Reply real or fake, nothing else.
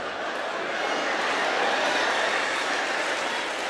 real